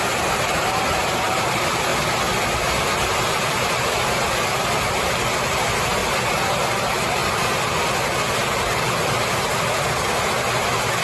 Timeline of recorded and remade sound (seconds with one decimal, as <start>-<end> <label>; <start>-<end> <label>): 0.0-1.9 remade; 1.9-3.4 recorded; 3.4-6.0 remade; 6.0-6.8 recorded; 6.8-7.2 remade; 7.2-9.8 recorded; 9.8-11.0 remade

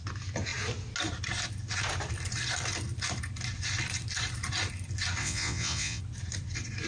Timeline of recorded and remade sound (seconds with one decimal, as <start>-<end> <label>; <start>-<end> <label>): 0.0-5.2 recorded; 5.2-6.0 remade; 6.0-6.9 recorded

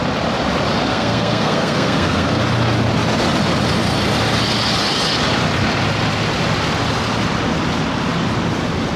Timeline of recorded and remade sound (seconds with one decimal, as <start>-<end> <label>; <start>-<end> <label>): 0.0-0.9 recorded; 0.9-2.4 remade; 2.4-9.0 recorded

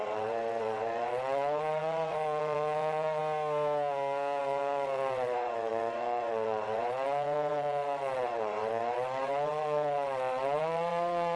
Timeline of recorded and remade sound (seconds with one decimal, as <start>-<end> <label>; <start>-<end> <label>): 0.0-3.2 remade; 3.2-4.4 recorded; 4.4-11.4 remade